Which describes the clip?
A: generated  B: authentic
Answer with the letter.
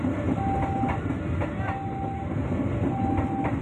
B